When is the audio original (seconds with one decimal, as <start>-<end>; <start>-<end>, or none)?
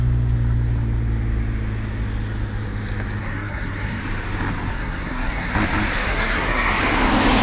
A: 0.0-3.2; 4.0-4.7; 5.5-6.1; 6.8-7.4